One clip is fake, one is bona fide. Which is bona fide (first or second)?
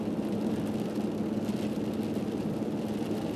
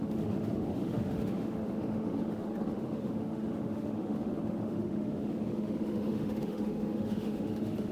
first